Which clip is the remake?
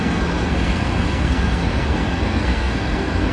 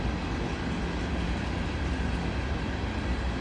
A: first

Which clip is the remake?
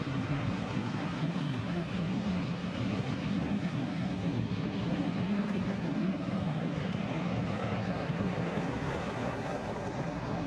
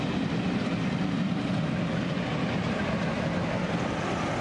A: first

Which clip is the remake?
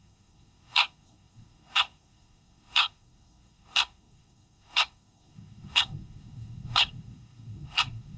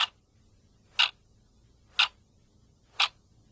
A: first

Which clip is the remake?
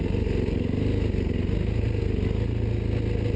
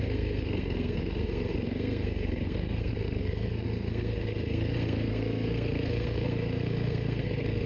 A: second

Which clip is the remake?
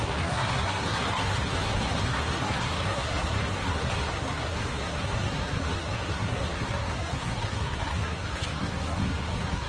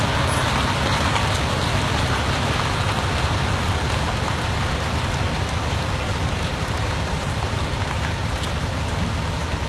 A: first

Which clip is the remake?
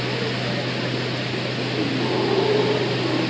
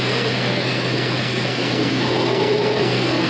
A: second